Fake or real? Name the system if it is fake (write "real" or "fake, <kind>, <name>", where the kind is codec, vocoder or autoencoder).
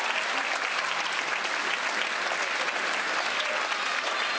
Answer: real